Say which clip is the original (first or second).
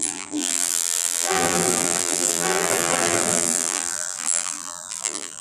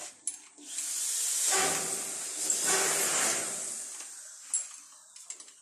second